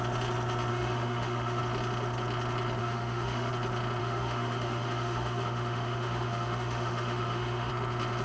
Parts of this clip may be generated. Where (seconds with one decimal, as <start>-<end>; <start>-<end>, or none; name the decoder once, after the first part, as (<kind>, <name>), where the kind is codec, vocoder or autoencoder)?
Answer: 0.7-1.6 (autoencoder, DAC-VAE); 2.8-3.5; 4.0-7.7